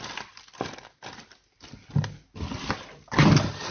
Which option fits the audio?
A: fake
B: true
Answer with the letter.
B